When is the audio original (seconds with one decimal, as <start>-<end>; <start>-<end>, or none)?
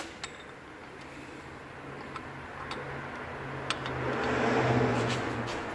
0.0-4.9